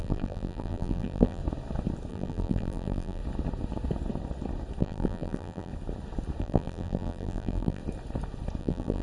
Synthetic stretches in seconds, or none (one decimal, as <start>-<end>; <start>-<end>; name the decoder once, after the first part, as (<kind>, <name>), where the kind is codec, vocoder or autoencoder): 0.0-1.4 (vocoder, BigVGAN v2); 2.1-3.2; 4.8-5.7; 6.4-7.8; 8.6-9.0